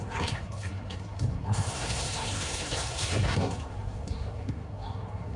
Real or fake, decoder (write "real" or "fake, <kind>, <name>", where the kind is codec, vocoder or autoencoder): fake, codec, SNAC